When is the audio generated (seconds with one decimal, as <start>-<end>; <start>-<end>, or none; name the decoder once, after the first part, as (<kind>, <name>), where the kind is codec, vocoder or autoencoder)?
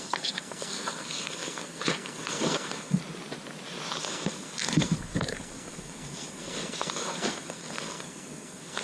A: 0.0-3.0 (codec, SNAC); 4.0-8.8